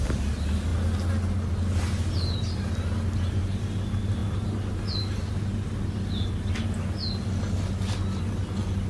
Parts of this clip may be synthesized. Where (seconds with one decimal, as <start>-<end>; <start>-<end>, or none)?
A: none